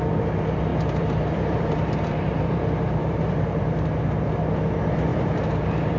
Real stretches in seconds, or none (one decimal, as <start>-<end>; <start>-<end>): 0.0-0.7; 4.3-5.1